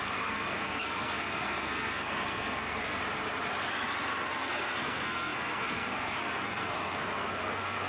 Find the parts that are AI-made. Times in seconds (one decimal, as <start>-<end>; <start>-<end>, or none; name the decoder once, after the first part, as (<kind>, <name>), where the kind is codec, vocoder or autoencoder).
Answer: 0.0-3.0 (codec, SNAC); 4.3-7.9